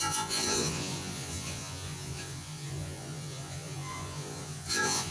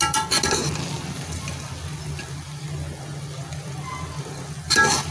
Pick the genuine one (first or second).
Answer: second